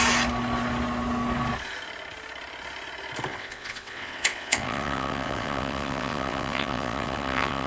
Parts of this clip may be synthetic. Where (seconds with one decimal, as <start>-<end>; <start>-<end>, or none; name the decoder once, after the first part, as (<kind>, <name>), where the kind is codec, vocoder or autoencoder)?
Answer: 3.3-7.7 (vocoder, WaveNeXt)